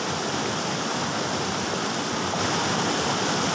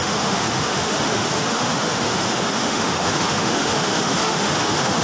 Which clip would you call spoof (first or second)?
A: second